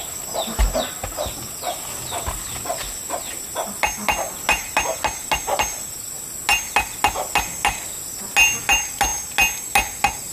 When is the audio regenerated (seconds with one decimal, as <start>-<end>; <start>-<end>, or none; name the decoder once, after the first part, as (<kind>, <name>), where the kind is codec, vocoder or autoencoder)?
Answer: none